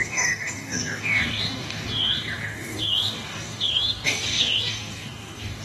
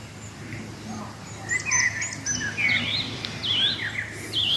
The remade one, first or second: first